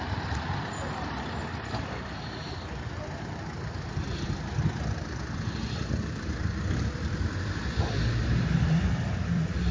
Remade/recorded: remade